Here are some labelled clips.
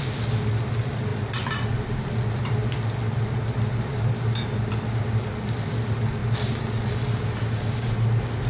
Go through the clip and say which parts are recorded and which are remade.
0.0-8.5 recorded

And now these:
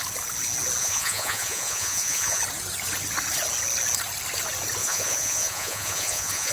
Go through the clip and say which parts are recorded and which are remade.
0.0-0.8 recorded; 0.8-2.4 remade; 2.4-4.8 recorded; 4.8-6.5 remade

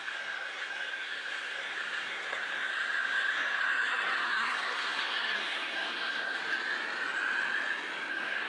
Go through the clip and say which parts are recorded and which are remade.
0.0-6.4 remade; 6.4-8.1 recorded; 8.1-8.5 remade

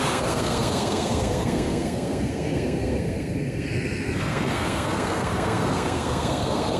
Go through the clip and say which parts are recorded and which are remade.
0.0-6.8 remade

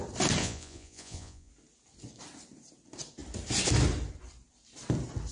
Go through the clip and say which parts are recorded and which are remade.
0.0-0.4 recorded; 0.4-1.5 remade; 1.5-5.3 recorded

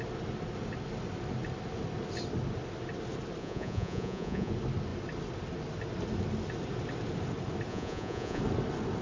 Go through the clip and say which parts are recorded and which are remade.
0.0-3.4 recorded; 3.4-4.5 remade; 4.5-7.7 recorded; 7.7-8.4 remade; 8.4-9.0 recorded